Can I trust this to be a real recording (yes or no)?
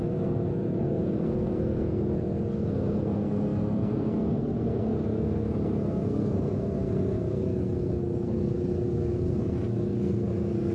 no